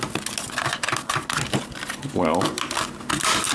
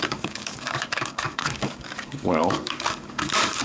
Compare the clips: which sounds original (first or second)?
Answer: first